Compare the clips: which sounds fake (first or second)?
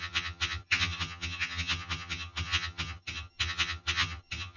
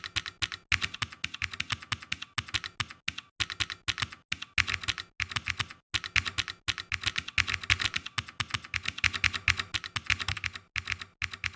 first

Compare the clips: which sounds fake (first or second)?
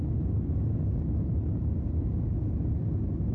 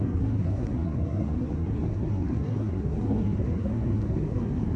second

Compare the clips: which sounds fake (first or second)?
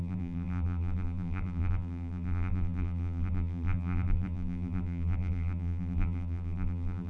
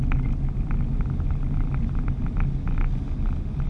first